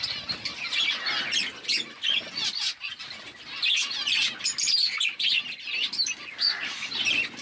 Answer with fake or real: real